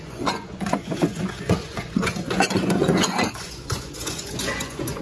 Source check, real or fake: fake